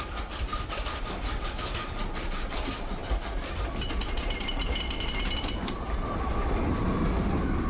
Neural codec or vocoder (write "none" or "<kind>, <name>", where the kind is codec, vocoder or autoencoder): vocoder, BigVGAN v2